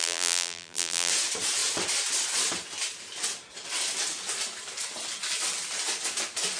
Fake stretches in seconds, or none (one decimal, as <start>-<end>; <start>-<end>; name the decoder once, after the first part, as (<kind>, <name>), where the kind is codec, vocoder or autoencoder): 0.0-1.1 (vocoder, BigVGAN v2)